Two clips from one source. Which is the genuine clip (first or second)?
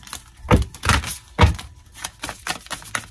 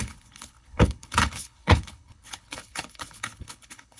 first